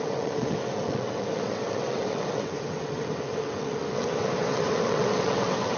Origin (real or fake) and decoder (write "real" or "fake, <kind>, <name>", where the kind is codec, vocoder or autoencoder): fake, vocoder, WaveNeXt